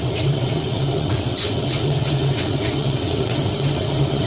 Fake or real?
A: fake